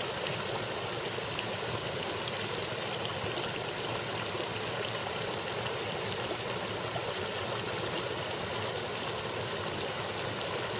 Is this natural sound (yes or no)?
yes